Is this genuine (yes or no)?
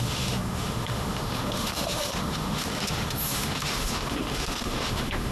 no